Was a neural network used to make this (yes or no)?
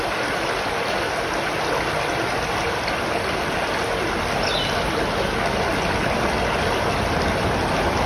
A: no